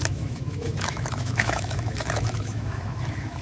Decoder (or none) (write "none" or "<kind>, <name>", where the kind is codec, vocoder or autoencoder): autoencoder, DAC-VAE